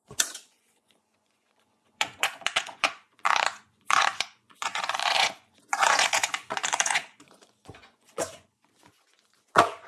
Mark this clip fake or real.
fake